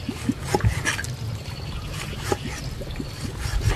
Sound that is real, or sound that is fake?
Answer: real